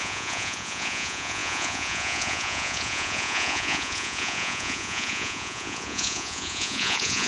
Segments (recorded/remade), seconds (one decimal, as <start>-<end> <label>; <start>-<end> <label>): 0.0-7.3 remade